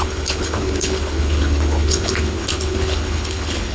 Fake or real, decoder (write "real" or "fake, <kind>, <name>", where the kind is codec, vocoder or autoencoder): fake, codec, HILCodec